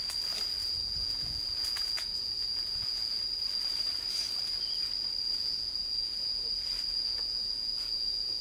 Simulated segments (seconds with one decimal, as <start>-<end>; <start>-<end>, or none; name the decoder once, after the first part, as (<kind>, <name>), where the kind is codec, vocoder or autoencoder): 0.6-3.2 (vocoder, Vocos); 5.4-6.5; 6.9-8.4